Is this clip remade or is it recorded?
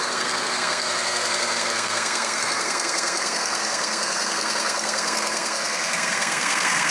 remade